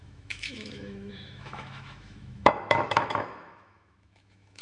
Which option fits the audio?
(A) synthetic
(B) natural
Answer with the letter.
A